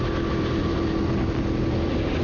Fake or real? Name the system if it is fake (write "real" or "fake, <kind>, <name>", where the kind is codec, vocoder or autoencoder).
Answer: real